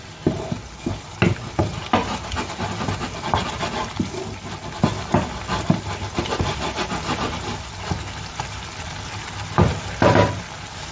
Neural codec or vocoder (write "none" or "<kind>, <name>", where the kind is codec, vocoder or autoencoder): none